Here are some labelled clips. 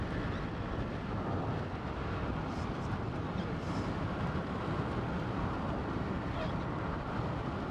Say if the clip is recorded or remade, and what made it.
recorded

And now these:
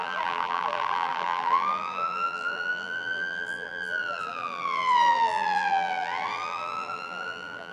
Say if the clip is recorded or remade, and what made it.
remade, vocoder, BigVGAN v2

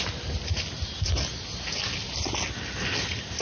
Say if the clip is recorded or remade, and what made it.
recorded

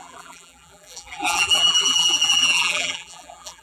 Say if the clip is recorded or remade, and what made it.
remade, vocoder, BigVGAN v2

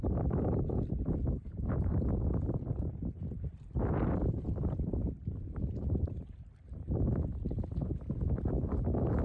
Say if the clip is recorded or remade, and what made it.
remade, vocoder, BigVGAN v2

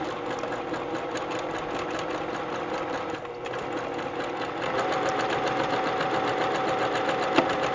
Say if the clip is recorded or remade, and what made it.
recorded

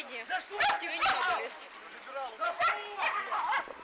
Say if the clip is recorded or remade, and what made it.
recorded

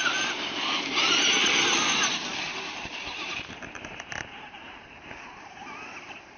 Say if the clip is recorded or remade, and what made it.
remade, vocoder, BigVGAN v2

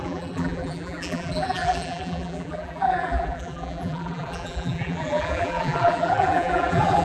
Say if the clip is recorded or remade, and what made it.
remade, vocoder, BigVGAN v2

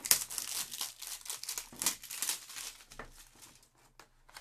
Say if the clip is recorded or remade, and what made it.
recorded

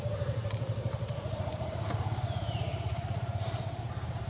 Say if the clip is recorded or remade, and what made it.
remade, vocoder, BigVGAN v2